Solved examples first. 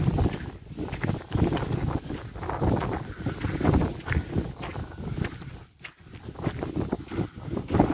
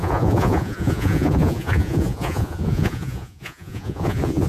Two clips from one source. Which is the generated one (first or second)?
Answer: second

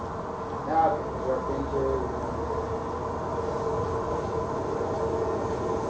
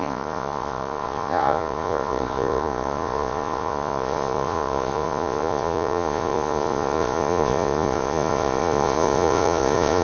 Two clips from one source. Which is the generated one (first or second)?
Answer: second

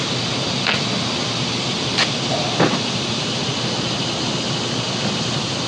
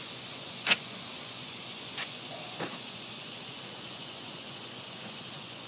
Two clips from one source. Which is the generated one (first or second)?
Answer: second